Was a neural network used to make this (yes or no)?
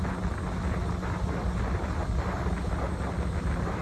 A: no